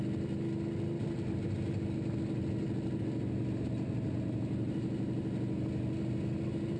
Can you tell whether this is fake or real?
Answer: real